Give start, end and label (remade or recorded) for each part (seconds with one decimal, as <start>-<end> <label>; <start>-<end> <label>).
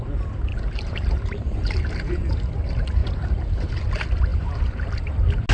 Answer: 0.0-0.5 recorded; 0.5-2.1 remade; 2.1-3.0 recorded; 3.0-3.7 remade; 3.7-4.3 recorded; 4.3-4.9 remade; 4.9-5.5 recorded